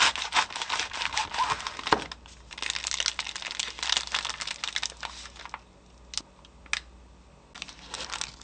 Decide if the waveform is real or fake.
real